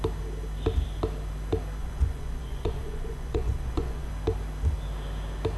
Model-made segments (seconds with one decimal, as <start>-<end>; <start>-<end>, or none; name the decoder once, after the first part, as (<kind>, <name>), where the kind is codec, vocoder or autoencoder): 1.8-4.1 (vocoder, Vocos)